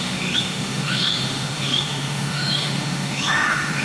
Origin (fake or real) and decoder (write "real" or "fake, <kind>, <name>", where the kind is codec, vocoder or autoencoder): fake, autoencoder, DAC-VAE